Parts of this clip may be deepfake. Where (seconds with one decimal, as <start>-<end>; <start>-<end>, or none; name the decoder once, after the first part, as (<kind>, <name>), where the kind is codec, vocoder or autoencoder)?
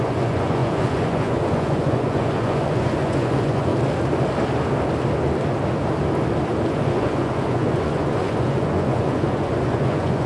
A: 0.0-3.7 (vocoder, Vocos); 6.7-10.3